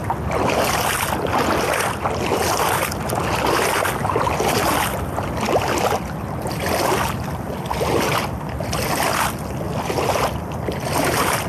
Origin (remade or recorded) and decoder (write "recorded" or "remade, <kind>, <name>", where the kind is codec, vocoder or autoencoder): recorded